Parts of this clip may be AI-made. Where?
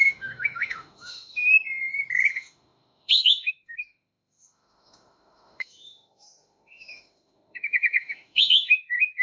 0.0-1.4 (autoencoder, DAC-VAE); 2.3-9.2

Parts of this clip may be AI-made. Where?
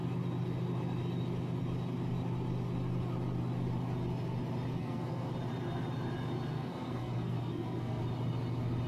4.7-5.3 (codec, SNAC); 6.5-8.0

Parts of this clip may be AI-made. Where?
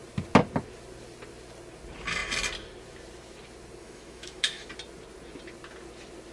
3.8-4.7 (autoencoder, DAC-VAE)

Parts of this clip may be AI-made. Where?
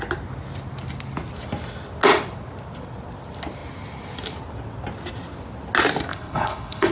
6.1-6.9 (codec, HILCodec)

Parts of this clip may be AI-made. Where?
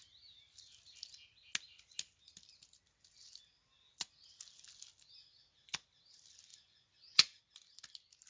6.5-7.4 (vocoder, Vocos)